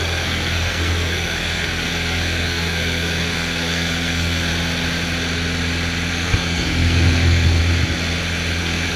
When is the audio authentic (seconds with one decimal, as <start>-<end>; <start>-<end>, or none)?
4.5-6.1; 7.6-8.6